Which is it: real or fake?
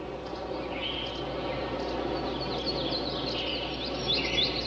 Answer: real